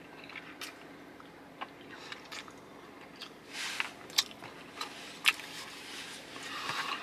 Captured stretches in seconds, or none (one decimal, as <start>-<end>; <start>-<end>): 0.0-7.0